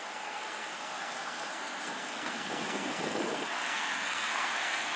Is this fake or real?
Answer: fake